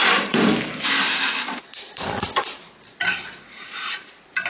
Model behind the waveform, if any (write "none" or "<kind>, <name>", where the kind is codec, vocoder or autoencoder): vocoder, BigVGAN v2